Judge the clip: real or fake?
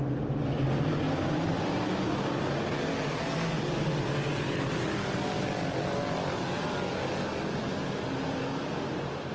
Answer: real